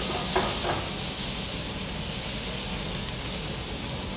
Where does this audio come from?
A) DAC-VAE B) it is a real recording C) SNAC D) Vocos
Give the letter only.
B